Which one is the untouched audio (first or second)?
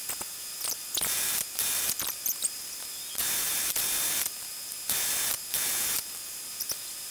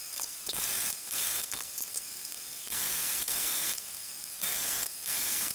first